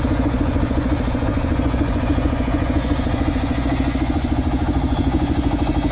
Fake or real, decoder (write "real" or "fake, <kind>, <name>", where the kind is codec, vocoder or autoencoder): fake, vocoder, Vocos